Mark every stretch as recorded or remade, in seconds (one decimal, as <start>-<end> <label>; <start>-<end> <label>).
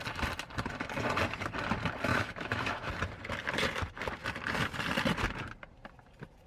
0.0-2.1 recorded; 2.1-2.9 remade; 2.9-6.5 recorded